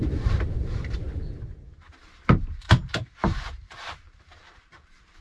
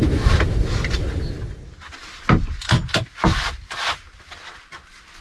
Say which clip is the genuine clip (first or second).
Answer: second